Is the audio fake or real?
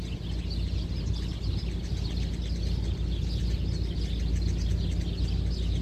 real